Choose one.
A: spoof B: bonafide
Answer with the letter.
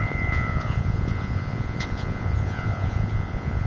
A